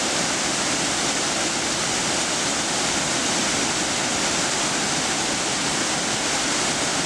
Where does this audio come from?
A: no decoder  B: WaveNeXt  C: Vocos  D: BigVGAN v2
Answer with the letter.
A